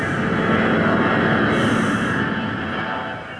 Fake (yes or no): no